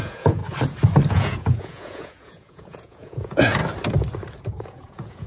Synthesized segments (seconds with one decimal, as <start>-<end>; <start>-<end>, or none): 0.0-0.4; 1.1-3.6; 4.4-5.3